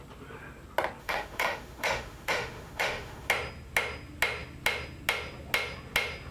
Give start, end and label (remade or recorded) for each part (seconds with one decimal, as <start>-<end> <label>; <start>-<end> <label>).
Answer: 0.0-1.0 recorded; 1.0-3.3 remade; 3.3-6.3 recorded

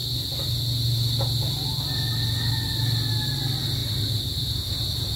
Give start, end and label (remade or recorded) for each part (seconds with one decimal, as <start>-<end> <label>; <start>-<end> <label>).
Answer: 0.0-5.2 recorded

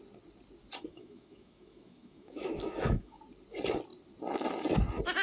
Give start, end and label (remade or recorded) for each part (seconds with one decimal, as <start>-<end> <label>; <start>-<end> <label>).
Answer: 0.0-0.9 recorded; 0.9-3.2 remade; 3.2-5.2 recorded

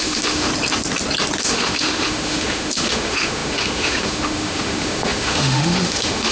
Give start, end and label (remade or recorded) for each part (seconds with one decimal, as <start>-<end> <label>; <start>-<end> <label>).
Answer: 0.0-0.5 remade; 0.5-1.4 recorded; 1.4-6.3 remade

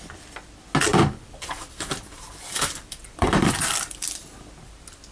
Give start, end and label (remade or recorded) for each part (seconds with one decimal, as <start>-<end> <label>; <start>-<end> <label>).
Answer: 0.0-0.9 recorded; 0.9-4.0 remade; 4.0-5.1 recorded

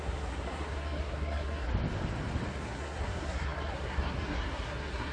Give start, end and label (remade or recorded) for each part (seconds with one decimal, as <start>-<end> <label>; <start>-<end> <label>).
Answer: 0.0-1.7 remade; 1.7-2.5 recorded; 2.5-5.1 remade

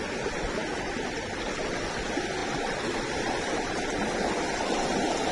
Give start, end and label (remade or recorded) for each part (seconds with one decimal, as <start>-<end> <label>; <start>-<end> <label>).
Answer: 0.0-5.3 recorded